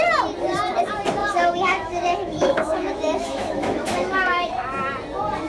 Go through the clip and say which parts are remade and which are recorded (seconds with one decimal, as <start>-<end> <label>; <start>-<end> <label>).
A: 0.0-1.2 recorded; 1.2-4.5 remade; 4.5-5.5 recorded

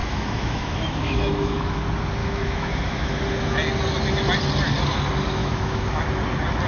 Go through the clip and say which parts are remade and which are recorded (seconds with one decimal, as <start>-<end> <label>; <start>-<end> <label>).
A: 0.0-1.8 remade; 1.8-2.2 recorded; 2.2-3.2 remade; 3.2-5.4 recorded; 5.4-6.0 remade; 6.0-6.7 recorded

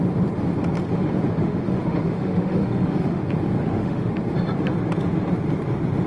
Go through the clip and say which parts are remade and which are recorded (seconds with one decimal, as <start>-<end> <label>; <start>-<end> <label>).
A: 0.0-1.4 recorded; 1.4-3.2 remade; 3.2-3.6 recorded; 3.6-4.1 remade; 4.1-6.1 recorded